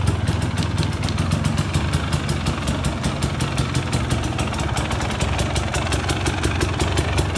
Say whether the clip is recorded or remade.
recorded